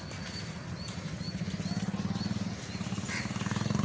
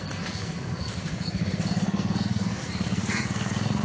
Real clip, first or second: first